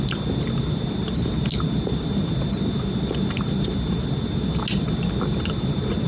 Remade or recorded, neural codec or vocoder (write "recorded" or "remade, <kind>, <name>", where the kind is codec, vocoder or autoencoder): recorded